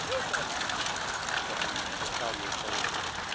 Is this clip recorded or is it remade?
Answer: recorded